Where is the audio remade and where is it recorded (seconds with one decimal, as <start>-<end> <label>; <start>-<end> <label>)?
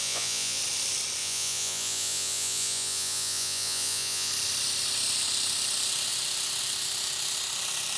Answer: 0.0-0.6 remade; 0.6-1.2 recorded; 1.2-4.3 remade; 4.3-8.0 recorded